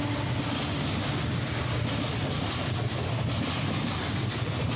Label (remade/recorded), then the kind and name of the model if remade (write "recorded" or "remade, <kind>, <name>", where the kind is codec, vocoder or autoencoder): remade, vocoder, BigVGAN v2